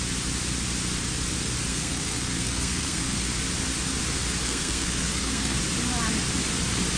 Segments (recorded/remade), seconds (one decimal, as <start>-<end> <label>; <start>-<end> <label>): 0.0-1.7 recorded; 1.7-3.3 remade; 3.3-4.4 recorded; 4.4-5.6 remade; 5.6-7.0 recorded